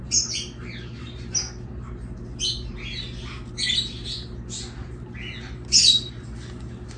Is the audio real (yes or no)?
yes